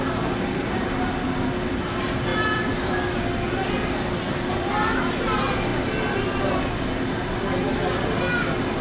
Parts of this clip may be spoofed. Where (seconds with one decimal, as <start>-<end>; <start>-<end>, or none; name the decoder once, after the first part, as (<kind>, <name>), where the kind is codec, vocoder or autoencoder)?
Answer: none